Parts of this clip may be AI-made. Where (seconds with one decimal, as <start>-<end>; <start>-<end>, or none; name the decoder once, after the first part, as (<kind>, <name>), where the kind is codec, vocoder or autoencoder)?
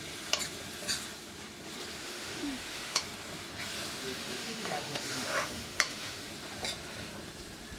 2.0-3.0 (autoencoder, DAC-VAE); 4.3-6.3